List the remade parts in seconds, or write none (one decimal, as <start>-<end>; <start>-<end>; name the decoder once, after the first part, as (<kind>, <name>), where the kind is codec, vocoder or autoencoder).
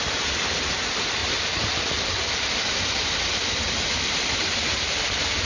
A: none